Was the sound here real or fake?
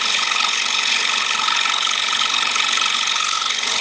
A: fake